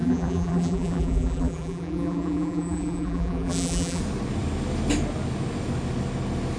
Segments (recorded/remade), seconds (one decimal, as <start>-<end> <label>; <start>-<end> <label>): 0.0-4.0 remade; 4.0-6.6 recorded